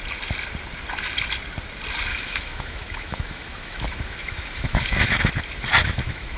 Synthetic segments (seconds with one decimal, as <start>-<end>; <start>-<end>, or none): 2.1-5.3; 5.8-6.4